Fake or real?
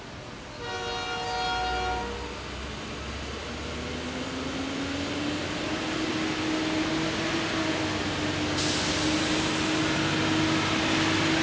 real